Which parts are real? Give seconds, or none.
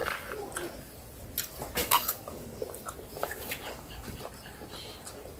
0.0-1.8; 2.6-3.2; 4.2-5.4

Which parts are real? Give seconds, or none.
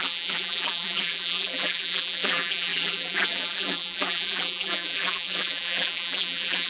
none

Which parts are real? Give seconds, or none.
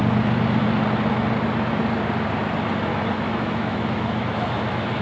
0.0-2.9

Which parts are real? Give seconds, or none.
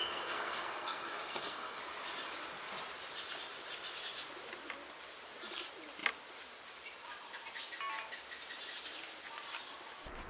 1.8-10.3